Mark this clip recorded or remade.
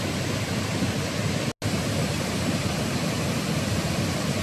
recorded